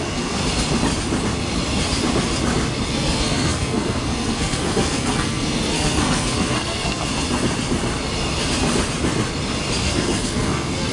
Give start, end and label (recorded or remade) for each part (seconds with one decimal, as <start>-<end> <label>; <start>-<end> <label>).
0.0-0.4 remade; 0.4-2.9 recorded; 2.9-7.1 remade; 7.1-9.8 recorded; 9.8-10.9 remade